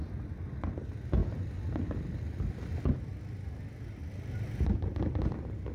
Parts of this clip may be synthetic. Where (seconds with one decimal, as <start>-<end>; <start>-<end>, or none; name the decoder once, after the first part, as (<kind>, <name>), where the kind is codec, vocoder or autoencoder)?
none